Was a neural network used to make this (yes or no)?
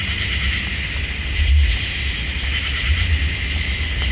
no